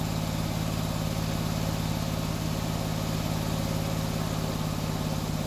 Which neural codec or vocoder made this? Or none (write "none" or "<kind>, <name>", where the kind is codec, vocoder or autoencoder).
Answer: none